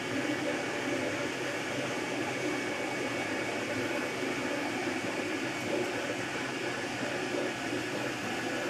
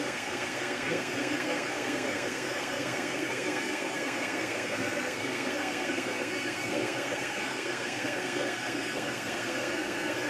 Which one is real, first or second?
first